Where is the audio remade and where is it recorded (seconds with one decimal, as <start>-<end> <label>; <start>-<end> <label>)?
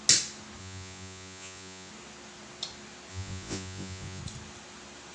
0.0-0.6 recorded; 0.6-1.9 remade; 1.9-3.1 recorded; 3.1-4.2 remade; 4.2-5.1 recorded